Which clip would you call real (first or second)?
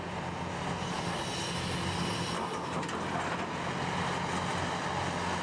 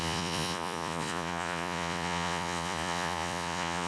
first